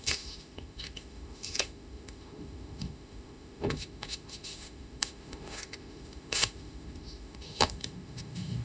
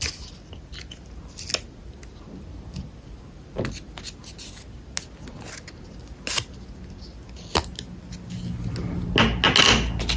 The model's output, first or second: first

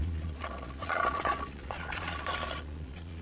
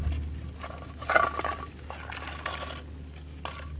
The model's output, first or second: first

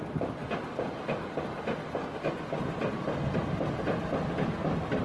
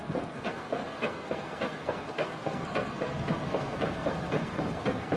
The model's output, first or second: second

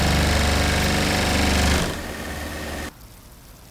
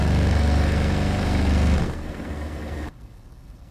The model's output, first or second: second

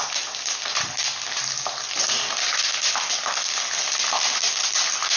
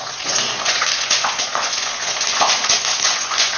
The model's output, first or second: second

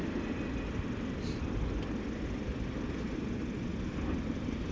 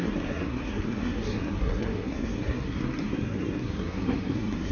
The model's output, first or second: second